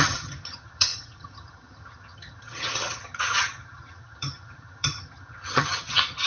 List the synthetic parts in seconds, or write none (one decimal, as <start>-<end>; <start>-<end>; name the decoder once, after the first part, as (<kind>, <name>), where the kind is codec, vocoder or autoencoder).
0.0-6.3 (vocoder, HiFi-GAN)